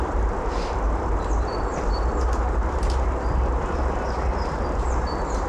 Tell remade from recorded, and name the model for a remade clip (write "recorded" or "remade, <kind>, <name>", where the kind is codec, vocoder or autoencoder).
remade, vocoder, BigVGAN v2